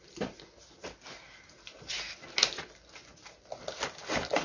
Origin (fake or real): real